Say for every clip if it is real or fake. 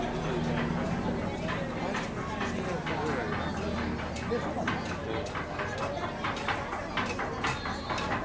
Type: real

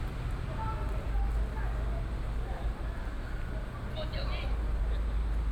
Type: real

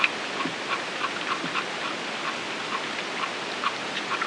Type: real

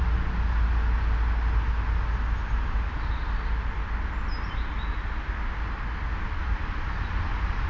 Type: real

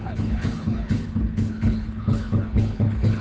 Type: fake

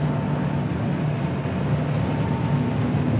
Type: real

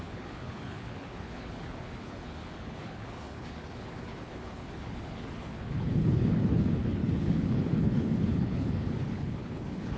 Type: fake